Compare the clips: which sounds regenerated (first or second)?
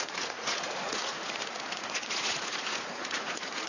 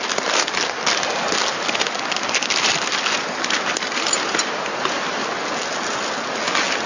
first